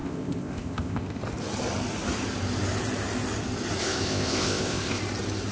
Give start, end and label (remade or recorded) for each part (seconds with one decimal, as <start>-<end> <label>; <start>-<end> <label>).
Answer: 0.0-1.2 remade; 1.2-3.8 recorded; 3.8-5.0 remade; 5.0-5.5 recorded